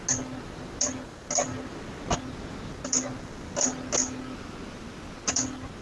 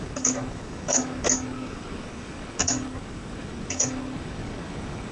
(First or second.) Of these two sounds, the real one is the first